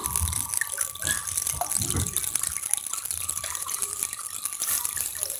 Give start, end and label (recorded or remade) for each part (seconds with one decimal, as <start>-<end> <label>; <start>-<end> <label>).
0.0-3.2 recorded; 3.2-4.2 remade; 4.2-5.4 recorded